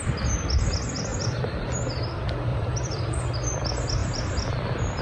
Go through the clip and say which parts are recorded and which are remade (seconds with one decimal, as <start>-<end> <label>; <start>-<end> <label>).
0.0-1.1 recorded; 1.1-1.6 remade; 1.6-2.5 recorded; 2.5-3.2 remade; 3.2-4.0 recorded; 4.0-5.0 remade